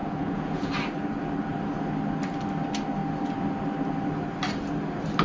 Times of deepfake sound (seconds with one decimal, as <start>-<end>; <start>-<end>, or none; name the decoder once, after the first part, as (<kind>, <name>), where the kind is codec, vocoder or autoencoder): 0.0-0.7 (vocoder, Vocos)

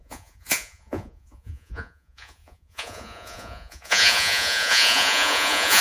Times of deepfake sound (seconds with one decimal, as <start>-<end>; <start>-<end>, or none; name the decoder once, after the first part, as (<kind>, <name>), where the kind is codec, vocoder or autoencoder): 0.0-5.8 (vocoder, Vocos)

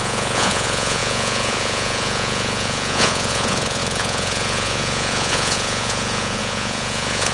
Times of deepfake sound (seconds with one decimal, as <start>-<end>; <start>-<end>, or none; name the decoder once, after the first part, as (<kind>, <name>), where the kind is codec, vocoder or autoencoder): 0.0-7.3 (vocoder, Vocos)

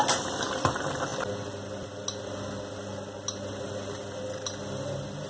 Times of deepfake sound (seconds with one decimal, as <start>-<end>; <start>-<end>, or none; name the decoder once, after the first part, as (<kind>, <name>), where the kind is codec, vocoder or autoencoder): none

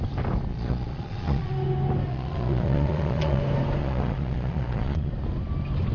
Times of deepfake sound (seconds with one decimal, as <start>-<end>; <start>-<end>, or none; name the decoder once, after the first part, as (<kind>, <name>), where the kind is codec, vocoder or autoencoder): 0.5-1.5 (vocoder, Vocos); 2.1-3.4; 3.8-5.1